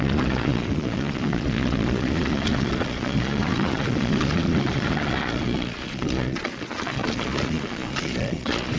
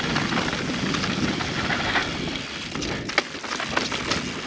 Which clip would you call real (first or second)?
second